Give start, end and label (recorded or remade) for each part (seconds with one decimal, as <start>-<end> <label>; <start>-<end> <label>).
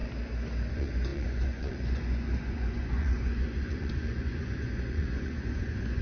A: 0.0-0.7 recorded; 0.7-6.0 remade